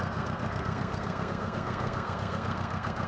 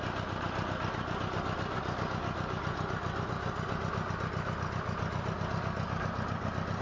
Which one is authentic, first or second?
second